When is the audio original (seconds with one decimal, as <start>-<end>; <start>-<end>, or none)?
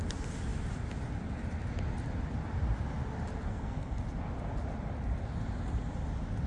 0.0-3.5; 4.0-6.5